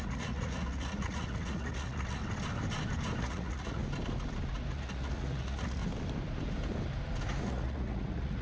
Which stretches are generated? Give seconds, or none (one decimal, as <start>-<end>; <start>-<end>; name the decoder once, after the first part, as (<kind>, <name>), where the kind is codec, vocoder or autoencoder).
0.0-2.2 (vocoder, Vocos); 3.2-3.8; 4.7-5.8; 7.4-8.4